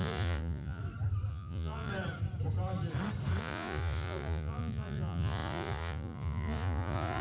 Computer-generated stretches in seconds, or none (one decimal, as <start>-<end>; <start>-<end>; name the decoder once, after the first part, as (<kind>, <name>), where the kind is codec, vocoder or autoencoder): 0.0-0.8 (vocoder, Vocos); 1.3-1.9; 3.4-7.2

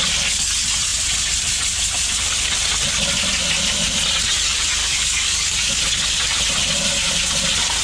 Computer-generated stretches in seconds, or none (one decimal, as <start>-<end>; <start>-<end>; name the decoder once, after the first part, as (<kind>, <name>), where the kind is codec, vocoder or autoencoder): 4.8-5.8 (codec, DAC)

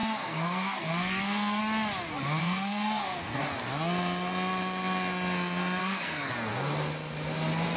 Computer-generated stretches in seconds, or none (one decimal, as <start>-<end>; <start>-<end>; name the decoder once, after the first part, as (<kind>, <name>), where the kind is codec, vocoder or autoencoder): 0.0-1.6 (codec, SNAC); 2.4-3.4; 5.8-6.3

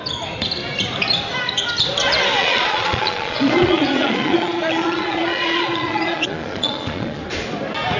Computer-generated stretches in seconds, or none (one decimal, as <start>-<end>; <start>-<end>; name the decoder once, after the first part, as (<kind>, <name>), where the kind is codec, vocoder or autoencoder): 2.4-7.2 (vocoder, Vocos)

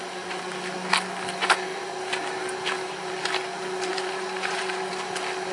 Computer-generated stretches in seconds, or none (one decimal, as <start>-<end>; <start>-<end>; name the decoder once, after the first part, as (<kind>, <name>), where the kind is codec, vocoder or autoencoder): 3.9-4.9 (vocoder, Vocos)